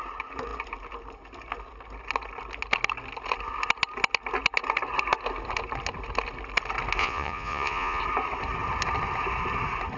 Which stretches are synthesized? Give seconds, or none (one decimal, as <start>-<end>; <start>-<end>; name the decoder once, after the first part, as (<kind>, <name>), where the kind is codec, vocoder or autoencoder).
7.0-8.0 (vocoder, Vocos)